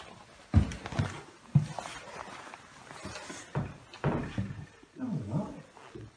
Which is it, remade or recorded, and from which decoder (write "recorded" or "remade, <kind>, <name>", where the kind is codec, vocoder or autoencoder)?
recorded